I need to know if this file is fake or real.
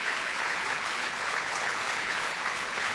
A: fake